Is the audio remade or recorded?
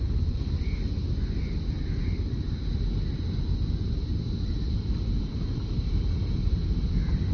recorded